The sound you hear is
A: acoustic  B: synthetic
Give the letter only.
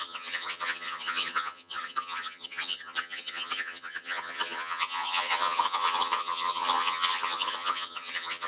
B